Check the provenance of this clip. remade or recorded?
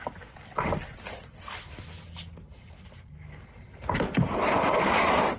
recorded